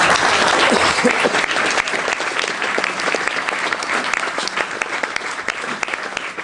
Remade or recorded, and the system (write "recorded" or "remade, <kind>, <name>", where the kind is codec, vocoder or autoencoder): recorded